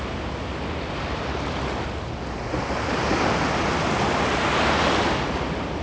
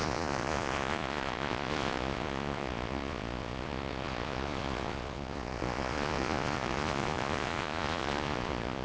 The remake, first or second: second